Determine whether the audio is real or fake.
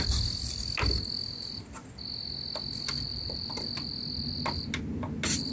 real